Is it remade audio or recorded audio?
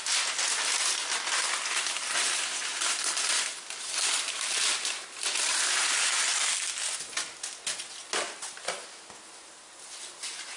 recorded